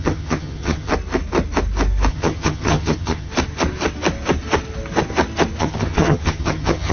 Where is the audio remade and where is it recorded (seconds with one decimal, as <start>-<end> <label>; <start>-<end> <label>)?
0.0-0.9 remade; 0.9-2.1 recorded; 2.1-3.3 remade; 3.3-5.6 recorded; 5.6-6.9 remade